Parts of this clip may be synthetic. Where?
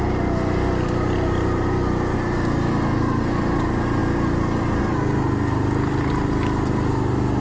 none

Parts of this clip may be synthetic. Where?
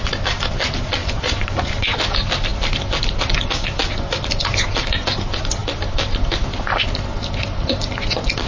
1.0-1.7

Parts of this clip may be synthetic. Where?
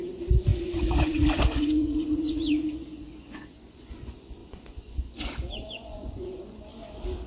0.0-6.7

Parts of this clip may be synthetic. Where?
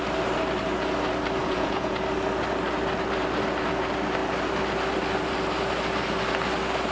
1.4-2.0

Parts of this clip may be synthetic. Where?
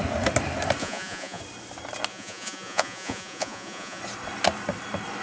0.8-1.4; 2.1-4.0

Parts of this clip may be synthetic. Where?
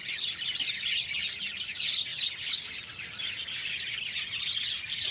none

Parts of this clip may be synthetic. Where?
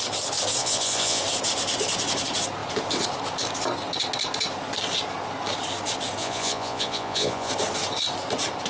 0.6-1.2; 6.2-7.5